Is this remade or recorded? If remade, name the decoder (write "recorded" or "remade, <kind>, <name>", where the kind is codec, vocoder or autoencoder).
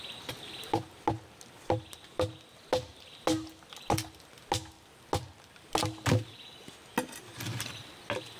recorded